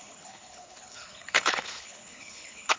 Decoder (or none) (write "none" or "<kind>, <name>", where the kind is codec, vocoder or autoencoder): codec, HILCodec